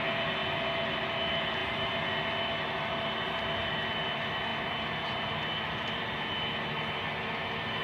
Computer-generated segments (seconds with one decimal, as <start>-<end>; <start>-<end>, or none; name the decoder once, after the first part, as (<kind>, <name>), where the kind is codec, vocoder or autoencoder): none